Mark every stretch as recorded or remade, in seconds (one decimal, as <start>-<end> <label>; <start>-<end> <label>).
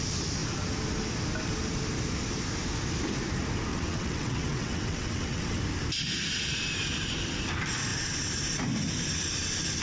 0.0-3.7 recorded; 3.7-5.6 remade; 5.6-9.8 recorded